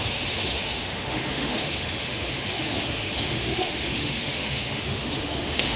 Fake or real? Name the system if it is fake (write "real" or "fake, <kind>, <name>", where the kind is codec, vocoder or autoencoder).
fake, autoencoder, DAC-VAE